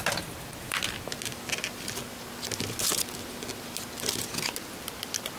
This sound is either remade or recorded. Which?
recorded